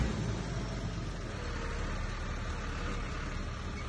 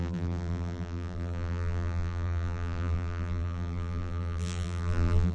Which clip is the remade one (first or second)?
second